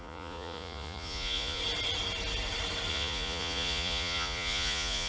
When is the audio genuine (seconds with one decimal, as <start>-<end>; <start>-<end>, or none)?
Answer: 1.6-2.9